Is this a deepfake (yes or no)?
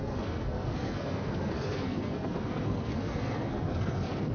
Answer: yes